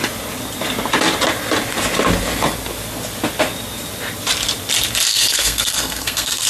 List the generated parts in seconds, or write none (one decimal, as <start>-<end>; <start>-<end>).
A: 5.1-6.5